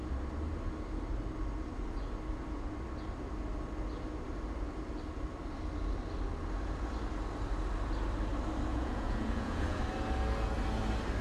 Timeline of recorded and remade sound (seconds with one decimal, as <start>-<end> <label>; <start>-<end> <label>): 0.0-8.7 recorded; 8.7-9.8 remade; 9.8-11.2 recorded